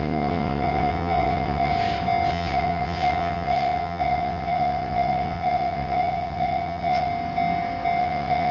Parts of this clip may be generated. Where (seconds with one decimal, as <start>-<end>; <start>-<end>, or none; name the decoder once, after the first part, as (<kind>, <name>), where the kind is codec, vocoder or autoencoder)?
0.0-1.7 (vocoder, WaveNeXt); 2.3-7.1; 8.0-8.5